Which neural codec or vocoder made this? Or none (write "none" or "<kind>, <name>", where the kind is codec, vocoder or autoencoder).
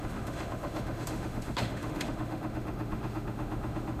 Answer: autoencoder, DAC-VAE